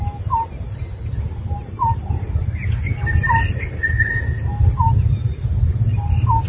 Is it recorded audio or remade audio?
recorded